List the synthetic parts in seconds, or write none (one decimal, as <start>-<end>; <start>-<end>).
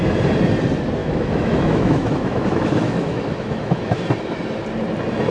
1.0-4.0